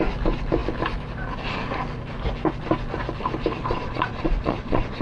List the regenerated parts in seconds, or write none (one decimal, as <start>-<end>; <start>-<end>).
3.6-5.0